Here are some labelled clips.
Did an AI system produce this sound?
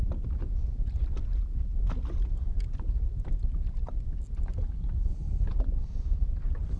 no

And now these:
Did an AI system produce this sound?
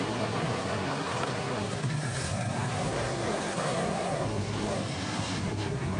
yes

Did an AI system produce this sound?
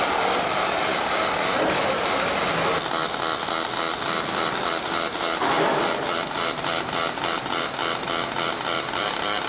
no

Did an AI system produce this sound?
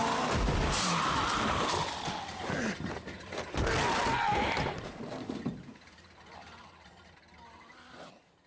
no